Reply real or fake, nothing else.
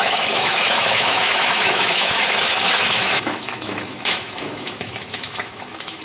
fake